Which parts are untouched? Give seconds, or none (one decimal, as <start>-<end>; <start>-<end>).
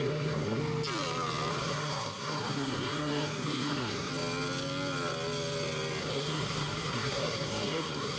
0.6-1.5; 4.1-6.0